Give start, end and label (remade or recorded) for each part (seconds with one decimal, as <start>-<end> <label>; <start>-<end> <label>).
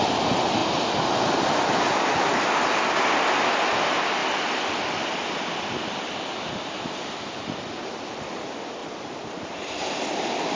0.0-8.8 recorded; 8.8-9.7 remade; 9.7-10.5 recorded